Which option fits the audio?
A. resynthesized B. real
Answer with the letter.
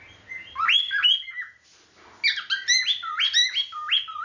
B